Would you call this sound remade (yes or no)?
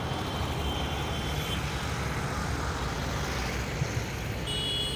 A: no